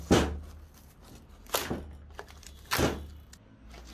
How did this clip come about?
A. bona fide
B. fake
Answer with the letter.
A